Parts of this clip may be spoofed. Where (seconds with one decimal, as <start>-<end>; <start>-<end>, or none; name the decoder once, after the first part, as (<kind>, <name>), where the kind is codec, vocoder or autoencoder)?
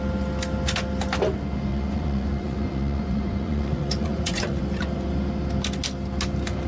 1.7-4.6 (vocoder, Vocos)